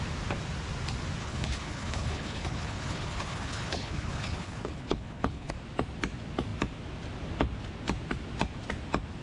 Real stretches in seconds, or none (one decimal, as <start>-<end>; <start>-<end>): 0.0-1.2; 5.5-9.2